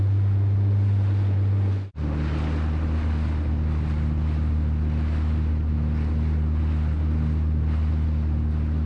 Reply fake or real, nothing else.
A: real